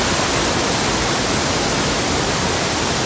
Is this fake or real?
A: real